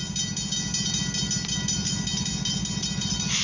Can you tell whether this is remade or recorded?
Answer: recorded